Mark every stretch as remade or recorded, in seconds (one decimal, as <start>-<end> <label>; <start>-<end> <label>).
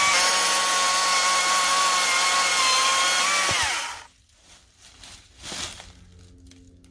0.0-6.9 recorded